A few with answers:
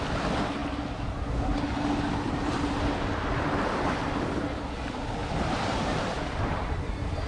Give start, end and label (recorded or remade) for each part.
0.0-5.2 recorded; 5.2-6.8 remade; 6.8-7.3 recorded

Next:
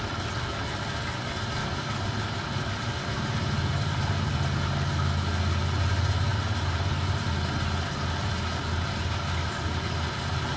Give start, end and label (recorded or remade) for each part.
0.0-1.6 recorded; 1.6-4.3 remade; 4.3-6.3 recorded; 6.3-7.3 remade; 7.3-10.6 recorded